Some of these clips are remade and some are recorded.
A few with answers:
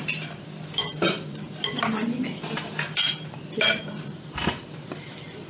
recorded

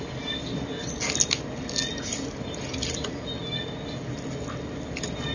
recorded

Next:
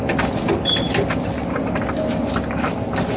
recorded